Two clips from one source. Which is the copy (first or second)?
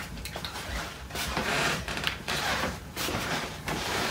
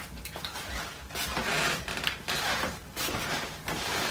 first